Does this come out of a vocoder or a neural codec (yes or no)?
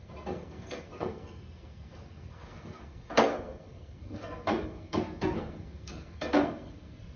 yes